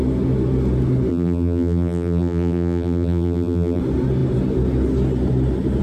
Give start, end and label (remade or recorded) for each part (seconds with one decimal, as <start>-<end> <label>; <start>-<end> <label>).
0.0-1.1 recorded; 1.1-3.8 remade; 3.8-5.8 recorded